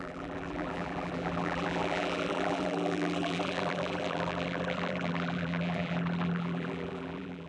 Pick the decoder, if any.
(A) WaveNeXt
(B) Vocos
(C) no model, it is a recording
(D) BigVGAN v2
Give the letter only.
D